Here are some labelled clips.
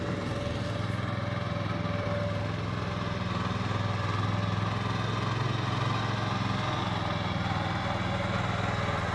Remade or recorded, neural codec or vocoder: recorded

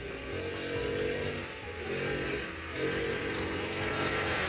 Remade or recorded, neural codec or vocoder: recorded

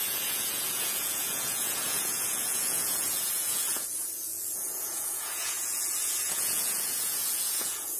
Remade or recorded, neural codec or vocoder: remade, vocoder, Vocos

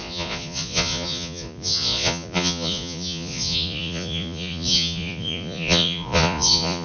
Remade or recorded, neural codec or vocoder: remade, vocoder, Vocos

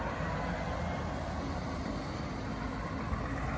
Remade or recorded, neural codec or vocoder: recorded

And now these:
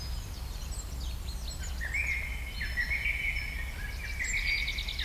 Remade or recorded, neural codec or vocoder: recorded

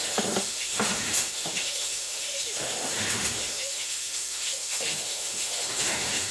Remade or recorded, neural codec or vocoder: remade, autoencoder, DAC-VAE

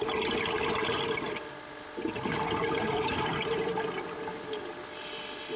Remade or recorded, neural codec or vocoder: recorded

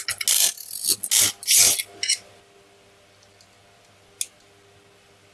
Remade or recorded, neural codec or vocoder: recorded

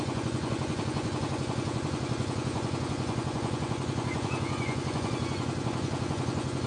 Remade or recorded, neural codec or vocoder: remade, vocoder, Vocos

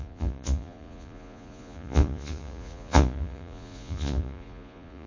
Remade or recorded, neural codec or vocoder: remade, vocoder, Vocos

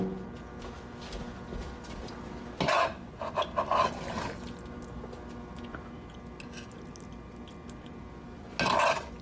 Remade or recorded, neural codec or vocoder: recorded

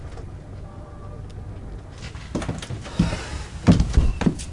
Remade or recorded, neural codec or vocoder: recorded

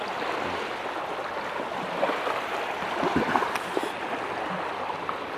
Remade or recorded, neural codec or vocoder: recorded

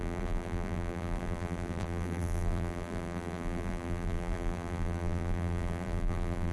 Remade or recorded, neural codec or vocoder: remade, vocoder, BigVGAN v2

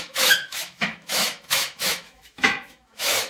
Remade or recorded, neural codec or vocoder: remade, autoencoder, DAC-VAE